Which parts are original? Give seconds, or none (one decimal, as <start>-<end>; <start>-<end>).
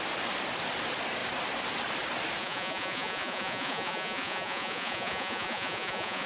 0.0-2.4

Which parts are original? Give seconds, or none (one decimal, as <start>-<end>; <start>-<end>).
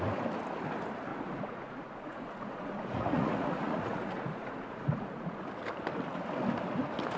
0.0-1.1; 5.4-7.2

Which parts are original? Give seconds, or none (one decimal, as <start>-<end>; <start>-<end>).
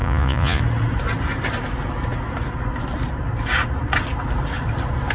0.6-5.1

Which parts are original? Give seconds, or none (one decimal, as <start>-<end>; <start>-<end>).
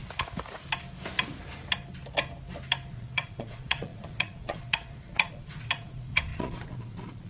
0.0-2.9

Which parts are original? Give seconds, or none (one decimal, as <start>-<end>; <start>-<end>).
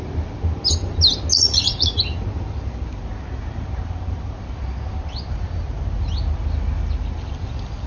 0.0-1.3; 2.0-7.9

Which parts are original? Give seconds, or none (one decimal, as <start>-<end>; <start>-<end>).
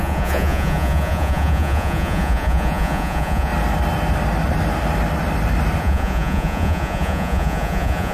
3.5-5.8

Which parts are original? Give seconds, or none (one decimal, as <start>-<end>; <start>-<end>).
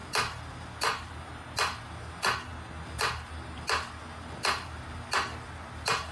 0.0-6.1